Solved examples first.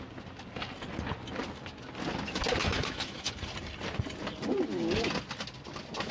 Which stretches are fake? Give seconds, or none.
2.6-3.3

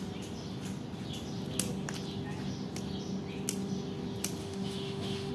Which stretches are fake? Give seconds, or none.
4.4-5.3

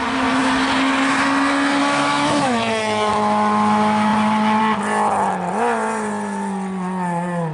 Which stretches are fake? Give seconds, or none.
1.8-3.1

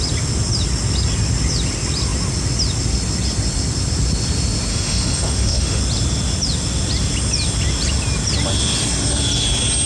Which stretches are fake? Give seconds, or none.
4.7-5.8

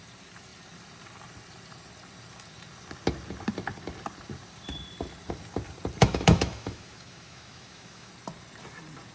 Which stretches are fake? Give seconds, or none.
6.0-8.1

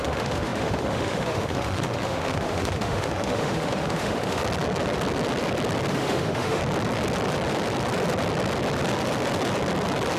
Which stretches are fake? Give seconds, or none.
0.0-4.4; 5.9-6.6